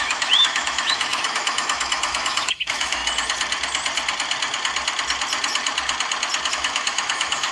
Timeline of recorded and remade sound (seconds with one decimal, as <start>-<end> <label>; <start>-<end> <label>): 0.0-3.0 remade; 3.0-6.5 recorded; 6.5-7.5 remade